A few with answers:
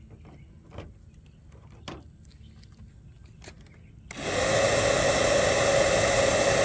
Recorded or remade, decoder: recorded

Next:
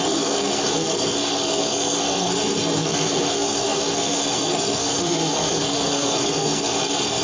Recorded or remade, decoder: remade, codec, SNAC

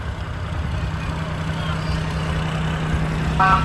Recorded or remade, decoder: recorded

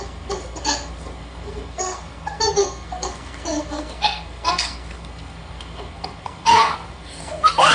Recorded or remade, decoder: remade, codec, SNAC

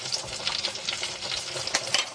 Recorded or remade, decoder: recorded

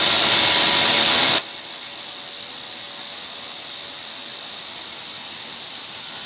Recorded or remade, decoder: recorded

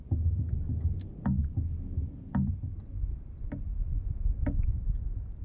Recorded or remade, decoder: recorded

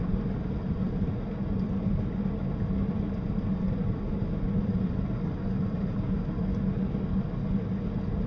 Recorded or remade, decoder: recorded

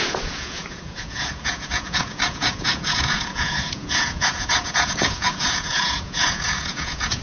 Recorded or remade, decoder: remade, vocoder, Vocos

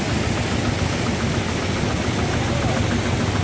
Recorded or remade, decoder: recorded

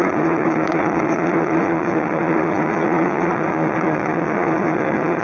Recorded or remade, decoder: remade, vocoder, Vocos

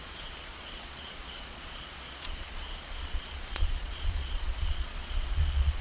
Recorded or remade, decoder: remade, vocoder, Vocos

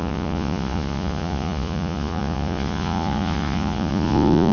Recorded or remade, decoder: remade, vocoder, Vocos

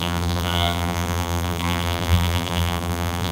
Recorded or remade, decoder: remade, vocoder, BigVGAN v2